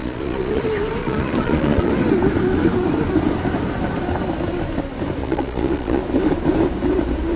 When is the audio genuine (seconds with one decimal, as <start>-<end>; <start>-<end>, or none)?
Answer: 0.6-1.0; 1.9-5.2; 6.0-7.4